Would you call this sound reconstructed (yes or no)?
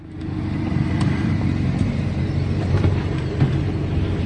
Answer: yes